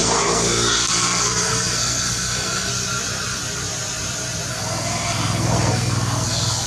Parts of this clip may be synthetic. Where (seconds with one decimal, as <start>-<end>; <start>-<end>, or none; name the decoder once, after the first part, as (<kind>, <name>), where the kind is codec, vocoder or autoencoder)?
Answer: 0.0-2.7 (codec, SNAC); 4.5-6.7